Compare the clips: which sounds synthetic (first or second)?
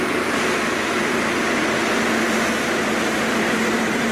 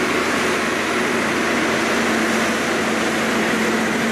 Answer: first